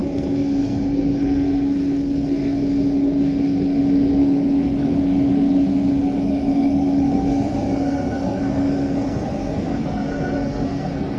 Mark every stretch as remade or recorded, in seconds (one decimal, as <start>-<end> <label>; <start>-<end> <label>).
0.0-11.2 remade